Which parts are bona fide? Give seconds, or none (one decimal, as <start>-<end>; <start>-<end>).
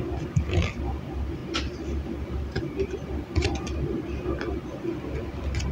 0.0-5.7